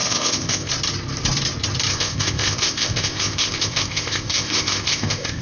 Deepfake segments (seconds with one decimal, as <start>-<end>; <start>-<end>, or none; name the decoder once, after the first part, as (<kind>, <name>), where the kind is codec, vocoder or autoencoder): 0.0-0.7 (codec, ZipCodec); 1.9-5.4